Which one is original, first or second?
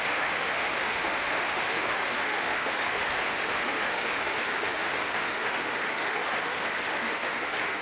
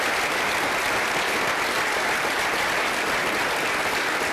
second